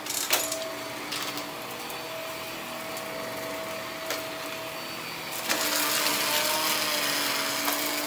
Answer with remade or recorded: recorded